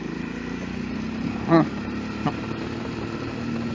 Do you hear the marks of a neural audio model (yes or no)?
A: yes